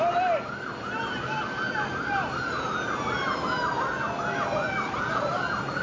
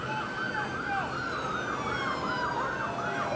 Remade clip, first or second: first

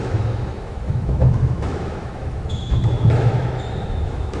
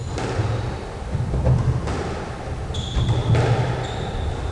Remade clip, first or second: first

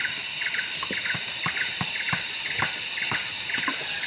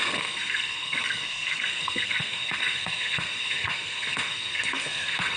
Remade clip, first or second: second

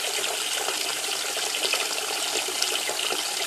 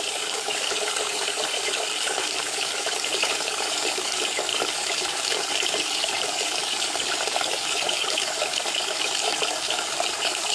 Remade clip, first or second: second